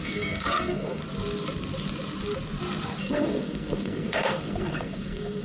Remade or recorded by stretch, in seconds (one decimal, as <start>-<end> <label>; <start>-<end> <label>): 0.0-1.0 remade; 1.0-3.0 recorded; 3.0-5.4 remade